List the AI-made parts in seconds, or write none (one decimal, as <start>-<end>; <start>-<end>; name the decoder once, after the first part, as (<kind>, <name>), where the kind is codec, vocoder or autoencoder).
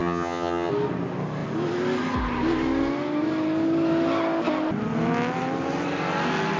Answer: 0.0-0.7 (vocoder, HiFi-GAN)